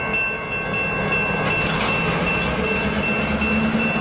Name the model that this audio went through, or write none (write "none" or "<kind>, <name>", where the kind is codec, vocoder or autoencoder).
none